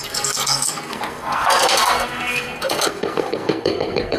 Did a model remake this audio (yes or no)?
yes